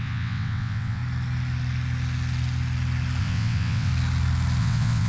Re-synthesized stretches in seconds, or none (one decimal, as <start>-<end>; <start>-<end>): 0.0-1.0; 3.2-3.9; 4.6-5.1